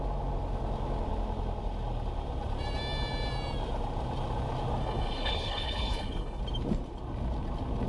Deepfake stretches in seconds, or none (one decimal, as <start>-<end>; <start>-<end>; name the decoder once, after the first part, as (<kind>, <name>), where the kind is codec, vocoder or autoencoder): 4.8-6.4 (codec, HILCodec)